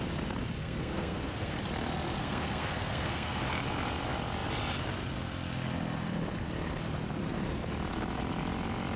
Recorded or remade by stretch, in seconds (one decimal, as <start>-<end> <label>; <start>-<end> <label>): 0.0-0.6 recorded; 0.6-1.6 remade; 1.6-2.2 recorded; 2.2-3.4 remade; 3.4-9.0 recorded